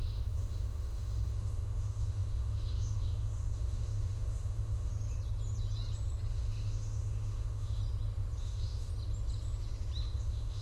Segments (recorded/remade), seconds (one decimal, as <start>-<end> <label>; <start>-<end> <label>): 0.0-4.9 remade; 4.9-6.3 recorded; 6.3-7.8 remade; 7.8-8.4 recorded; 8.4-8.9 remade; 8.9-10.2 recorded; 10.2-10.6 remade